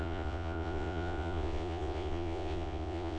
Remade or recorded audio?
remade